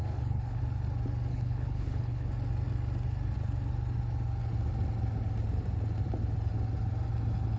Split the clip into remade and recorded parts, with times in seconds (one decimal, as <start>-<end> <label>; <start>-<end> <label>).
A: 0.0-0.6 remade; 0.6-1.3 recorded; 1.3-2.3 remade; 2.3-7.6 recorded